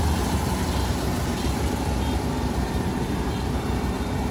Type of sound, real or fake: fake